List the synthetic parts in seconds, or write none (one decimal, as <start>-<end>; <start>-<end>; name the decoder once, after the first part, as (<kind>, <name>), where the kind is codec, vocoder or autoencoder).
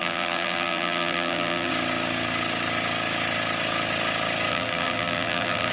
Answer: 0.0-1.7 (vocoder, BigVGAN v2); 4.5-5.7